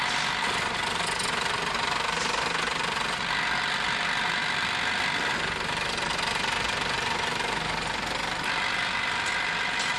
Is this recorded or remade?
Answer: recorded